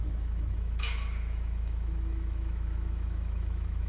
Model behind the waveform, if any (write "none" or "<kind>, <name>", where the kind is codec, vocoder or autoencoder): autoencoder, DAC-VAE